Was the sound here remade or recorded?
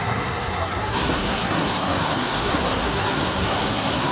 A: remade